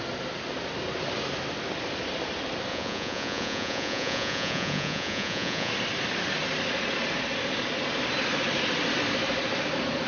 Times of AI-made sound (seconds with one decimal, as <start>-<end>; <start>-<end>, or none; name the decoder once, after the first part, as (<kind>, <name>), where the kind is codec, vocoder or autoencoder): 2.7-5.7 (vocoder, Vocos)